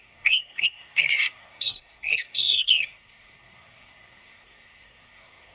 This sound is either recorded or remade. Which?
remade